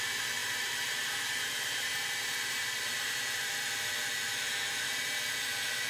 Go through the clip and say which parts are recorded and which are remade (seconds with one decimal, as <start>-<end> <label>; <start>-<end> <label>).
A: 0.0-0.4 recorded; 0.4-3.4 remade; 3.4-5.9 recorded